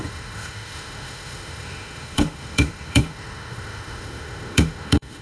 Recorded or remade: remade